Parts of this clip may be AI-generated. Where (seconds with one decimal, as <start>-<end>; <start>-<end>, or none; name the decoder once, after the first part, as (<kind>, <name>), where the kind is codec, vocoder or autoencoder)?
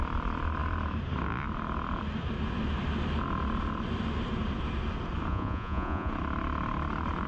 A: 5.3-6.1 (vocoder, Vocos)